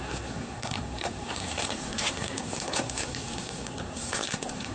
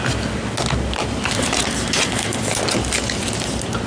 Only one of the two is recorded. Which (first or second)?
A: second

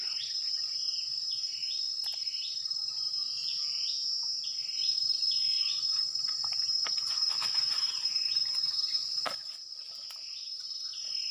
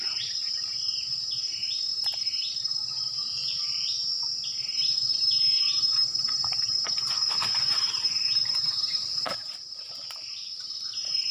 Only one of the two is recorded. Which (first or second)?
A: first